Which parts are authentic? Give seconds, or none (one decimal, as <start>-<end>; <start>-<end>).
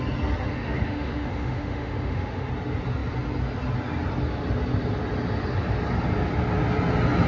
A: 0.0-0.5; 2.5-7.3